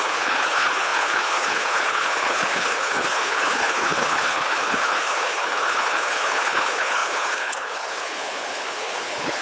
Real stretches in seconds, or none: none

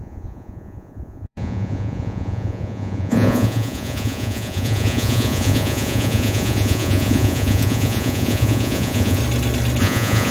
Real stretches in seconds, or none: 9.2-9.8

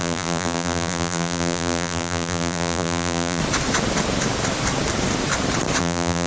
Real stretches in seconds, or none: 3.4-5.8

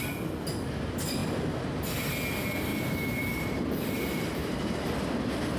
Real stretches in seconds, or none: 0.0-2.7; 4.9-5.6

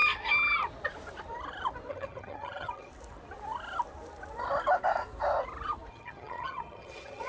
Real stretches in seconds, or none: 0.0-1.9; 2.9-5.9

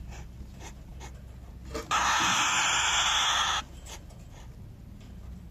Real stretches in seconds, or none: 0.0-5.5